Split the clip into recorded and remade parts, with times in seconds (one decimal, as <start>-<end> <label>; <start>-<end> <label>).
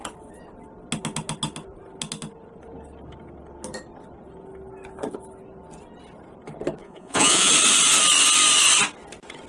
0.0-6.8 recorded; 6.8-7.5 remade; 7.5-9.5 recorded